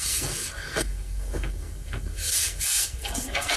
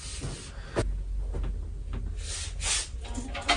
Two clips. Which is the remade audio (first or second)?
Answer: first